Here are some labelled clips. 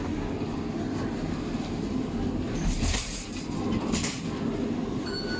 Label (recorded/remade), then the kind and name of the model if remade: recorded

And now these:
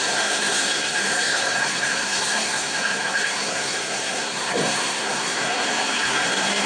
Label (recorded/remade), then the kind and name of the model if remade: remade, codec, SNAC